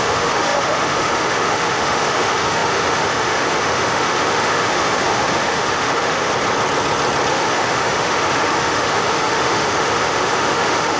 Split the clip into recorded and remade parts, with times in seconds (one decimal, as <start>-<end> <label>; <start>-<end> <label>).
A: 0.0-6.3 remade; 6.3-7.3 recorded; 7.3-11.0 remade